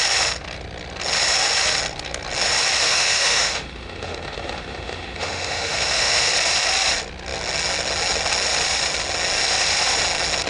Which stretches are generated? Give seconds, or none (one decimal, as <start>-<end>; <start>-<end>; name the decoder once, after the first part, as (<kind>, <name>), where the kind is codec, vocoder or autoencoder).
2.8-6.3 (autoencoder, DAC-VAE)